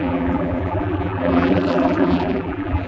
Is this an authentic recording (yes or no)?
no